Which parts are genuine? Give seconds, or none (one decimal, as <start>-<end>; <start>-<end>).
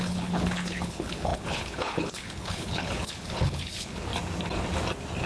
4.1-5.3